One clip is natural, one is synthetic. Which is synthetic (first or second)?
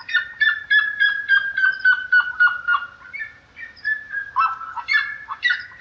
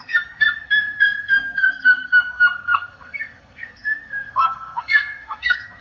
second